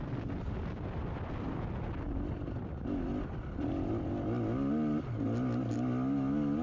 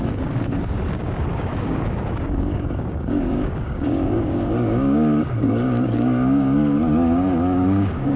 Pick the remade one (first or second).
second